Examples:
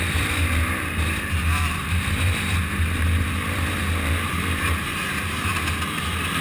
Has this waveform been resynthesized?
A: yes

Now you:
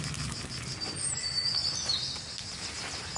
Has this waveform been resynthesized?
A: no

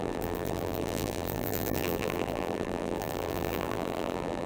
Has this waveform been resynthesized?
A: yes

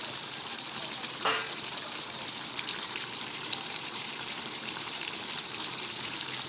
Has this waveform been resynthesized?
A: yes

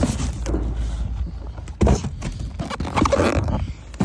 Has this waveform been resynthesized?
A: no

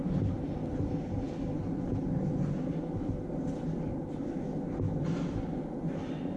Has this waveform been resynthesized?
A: no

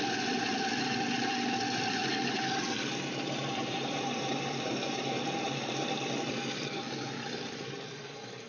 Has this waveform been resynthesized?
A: yes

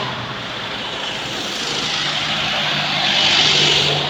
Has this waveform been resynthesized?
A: no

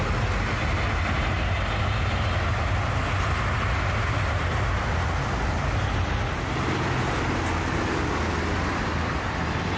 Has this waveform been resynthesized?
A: no